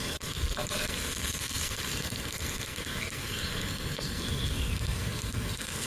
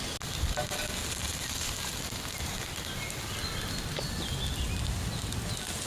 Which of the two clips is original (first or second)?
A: second